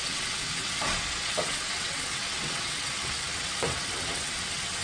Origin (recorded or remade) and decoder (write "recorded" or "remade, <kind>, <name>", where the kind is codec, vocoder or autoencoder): remade, vocoder, WaveNeXt